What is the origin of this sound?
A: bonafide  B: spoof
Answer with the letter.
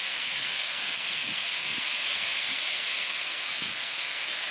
B